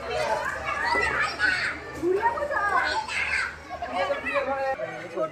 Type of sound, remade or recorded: recorded